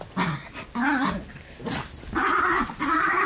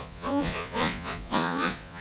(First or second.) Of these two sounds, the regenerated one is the second